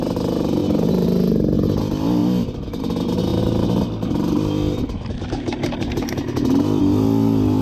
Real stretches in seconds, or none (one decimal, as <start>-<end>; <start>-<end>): 0.0-7.6